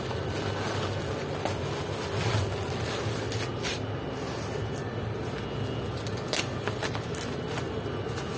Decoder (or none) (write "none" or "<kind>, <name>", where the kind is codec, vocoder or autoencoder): none